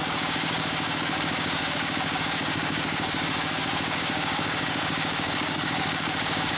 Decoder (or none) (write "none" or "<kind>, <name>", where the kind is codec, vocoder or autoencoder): codec, DAC